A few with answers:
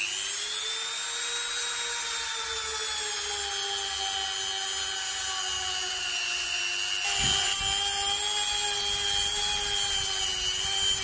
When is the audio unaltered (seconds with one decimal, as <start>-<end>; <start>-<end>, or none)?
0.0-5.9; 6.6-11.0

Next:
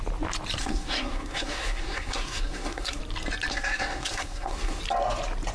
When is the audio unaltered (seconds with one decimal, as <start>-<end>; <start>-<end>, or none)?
0.0-0.6; 3.0-3.5; 4.8-5.5

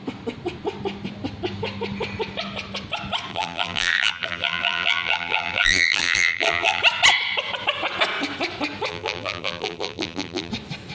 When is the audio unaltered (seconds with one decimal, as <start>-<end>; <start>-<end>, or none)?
0.0-3.3; 6.8-8.9; 10.5-10.9